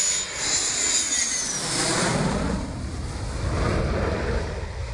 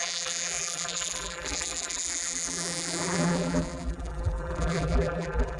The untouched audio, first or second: first